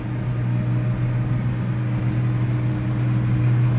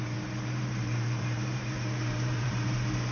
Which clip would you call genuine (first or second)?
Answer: first